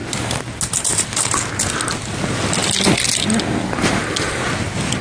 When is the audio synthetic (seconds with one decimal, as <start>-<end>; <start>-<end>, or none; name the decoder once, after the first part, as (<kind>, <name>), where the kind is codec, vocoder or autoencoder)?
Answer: none